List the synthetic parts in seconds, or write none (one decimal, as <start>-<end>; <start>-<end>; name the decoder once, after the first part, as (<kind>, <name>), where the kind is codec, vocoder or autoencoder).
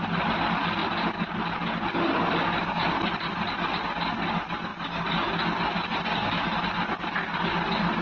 none